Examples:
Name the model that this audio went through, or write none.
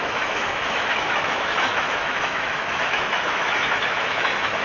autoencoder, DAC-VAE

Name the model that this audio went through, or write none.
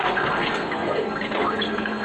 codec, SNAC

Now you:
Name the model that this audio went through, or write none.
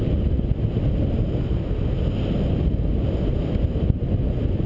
none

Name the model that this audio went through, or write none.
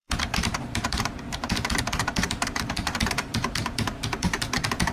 vocoder, BigVGAN v2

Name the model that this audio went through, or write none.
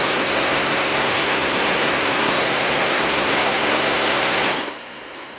codec, SNAC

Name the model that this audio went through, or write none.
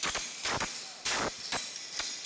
none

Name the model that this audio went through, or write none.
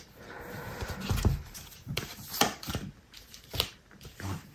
vocoder, BigVGAN v2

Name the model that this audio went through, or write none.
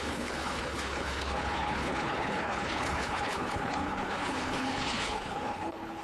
codec, HILCodec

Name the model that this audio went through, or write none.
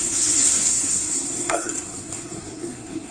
codec, SNAC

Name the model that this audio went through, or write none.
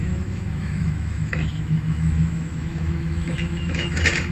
autoencoder, DAC-VAE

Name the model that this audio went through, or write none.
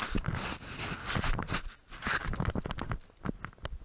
none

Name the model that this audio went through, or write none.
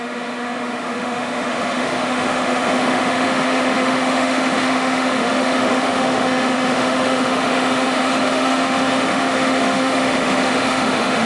autoencoder, DAC-VAE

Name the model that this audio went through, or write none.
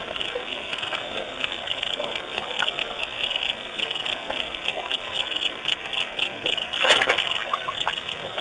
codec, SNAC